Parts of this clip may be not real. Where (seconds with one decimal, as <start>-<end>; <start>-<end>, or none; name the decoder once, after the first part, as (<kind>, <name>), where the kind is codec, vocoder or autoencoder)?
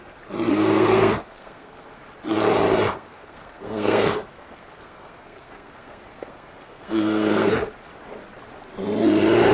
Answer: 0.5-2.0 (codec, SNAC); 2.9-7.5